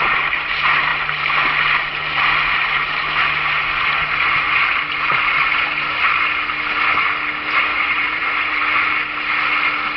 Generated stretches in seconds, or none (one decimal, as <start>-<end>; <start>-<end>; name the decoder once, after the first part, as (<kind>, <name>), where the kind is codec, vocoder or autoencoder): 7.7-8.6 (vocoder, Vocos)